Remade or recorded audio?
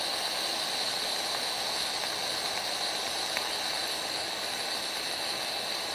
recorded